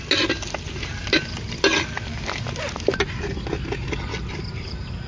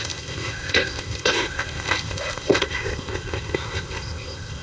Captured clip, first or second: first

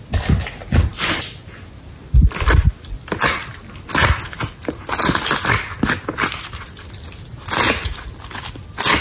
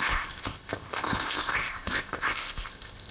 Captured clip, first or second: first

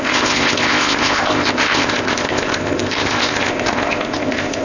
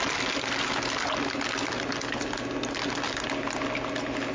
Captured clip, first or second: second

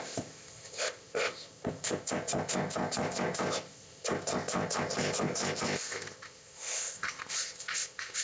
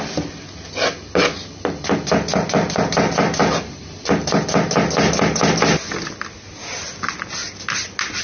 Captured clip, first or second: second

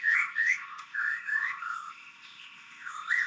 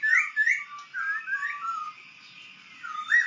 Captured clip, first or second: second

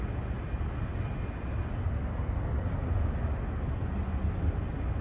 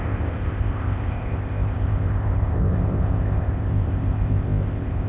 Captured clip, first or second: first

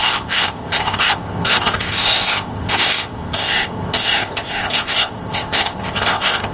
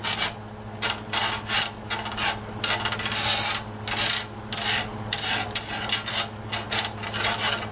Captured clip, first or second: second